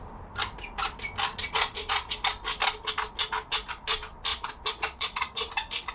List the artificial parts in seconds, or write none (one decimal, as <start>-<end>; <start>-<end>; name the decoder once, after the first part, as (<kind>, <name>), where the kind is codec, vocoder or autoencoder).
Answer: 1.3-2.1 (vocoder, Vocos); 4.3-5.5